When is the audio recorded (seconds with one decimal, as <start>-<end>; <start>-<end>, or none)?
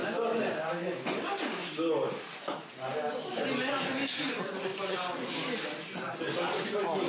0.0-7.1